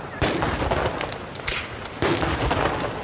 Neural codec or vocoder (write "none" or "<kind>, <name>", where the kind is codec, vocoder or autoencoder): none